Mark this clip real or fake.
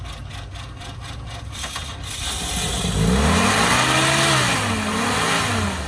real